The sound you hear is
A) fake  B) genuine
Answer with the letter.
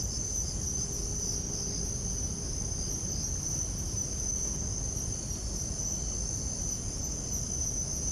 B